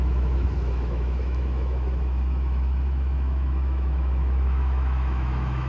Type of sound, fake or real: fake